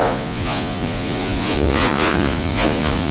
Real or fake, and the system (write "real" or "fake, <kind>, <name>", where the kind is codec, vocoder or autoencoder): fake, vocoder, Vocos